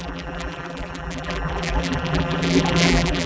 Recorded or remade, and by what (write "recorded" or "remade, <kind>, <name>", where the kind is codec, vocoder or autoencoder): remade, vocoder, BigVGAN v2